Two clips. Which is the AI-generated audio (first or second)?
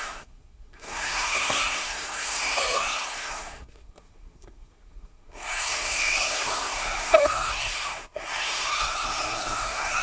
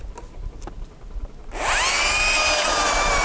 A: first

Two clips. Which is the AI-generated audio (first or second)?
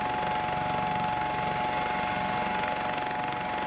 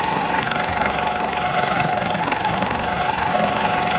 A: second